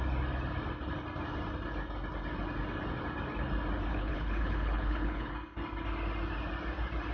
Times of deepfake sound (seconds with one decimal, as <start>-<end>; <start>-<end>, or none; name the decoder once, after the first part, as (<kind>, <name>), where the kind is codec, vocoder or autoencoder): 3.9-5.3 (codec, HILCodec)